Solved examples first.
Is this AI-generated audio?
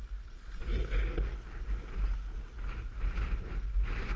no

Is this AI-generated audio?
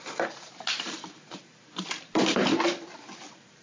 yes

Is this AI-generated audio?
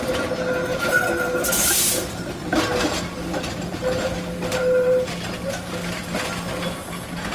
no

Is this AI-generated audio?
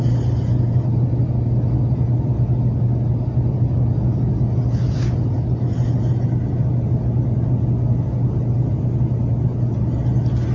no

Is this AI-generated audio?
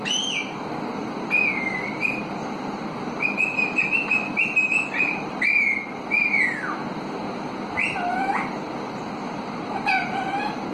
no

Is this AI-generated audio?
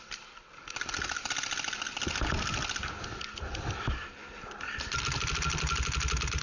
no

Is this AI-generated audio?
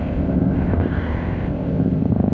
yes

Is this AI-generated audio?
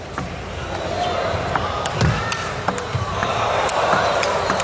no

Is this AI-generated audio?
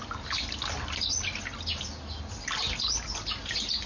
no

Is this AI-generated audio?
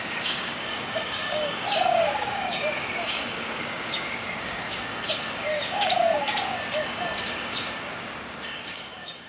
yes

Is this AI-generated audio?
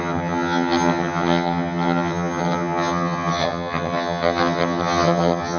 yes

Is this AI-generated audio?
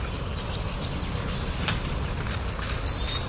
no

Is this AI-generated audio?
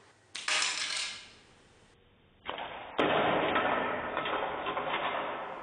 no